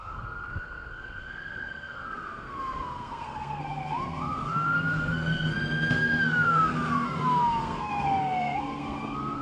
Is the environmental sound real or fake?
fake